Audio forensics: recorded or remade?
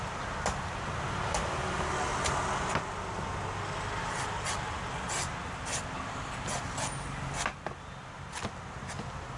recorded